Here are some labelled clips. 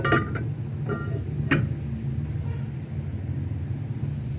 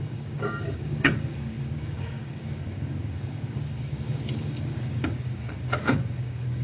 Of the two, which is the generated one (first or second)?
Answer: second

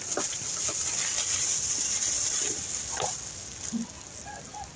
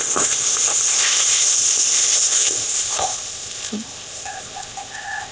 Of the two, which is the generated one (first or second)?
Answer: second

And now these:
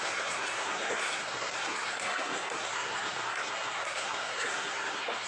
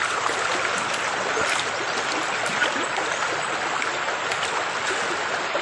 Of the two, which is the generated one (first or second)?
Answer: first